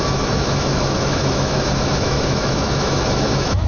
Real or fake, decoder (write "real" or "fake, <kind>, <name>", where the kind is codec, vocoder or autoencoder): fake, autoencoder, DAC-VAE